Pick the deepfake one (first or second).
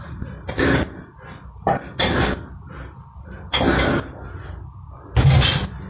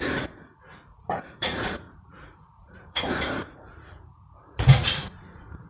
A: second